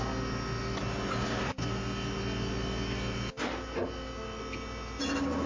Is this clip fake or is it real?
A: real